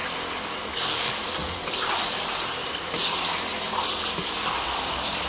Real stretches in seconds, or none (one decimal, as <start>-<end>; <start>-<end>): 0.0-5.3